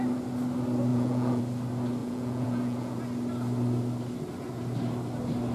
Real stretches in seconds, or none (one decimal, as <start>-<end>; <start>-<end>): 0.0-0.9; 1.4-2.0; 3.0-5.5